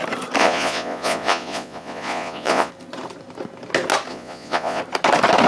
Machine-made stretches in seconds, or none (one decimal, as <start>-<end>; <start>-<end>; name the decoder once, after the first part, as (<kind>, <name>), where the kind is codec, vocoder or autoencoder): 0.4-2.7 (vocoder, Vocos); 4.1-4.8